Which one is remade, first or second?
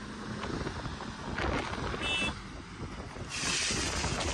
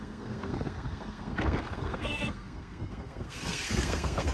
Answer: second